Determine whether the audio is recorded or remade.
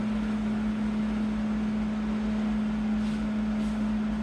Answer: recorded